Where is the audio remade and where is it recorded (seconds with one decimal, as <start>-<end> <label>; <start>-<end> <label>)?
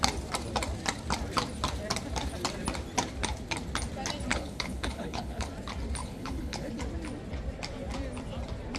0.0-4.3 recorded; 4.3-5.5 remade; 5.5-6.0 recorded; 6.0-6.7 remade; 6.7-8.8 recorded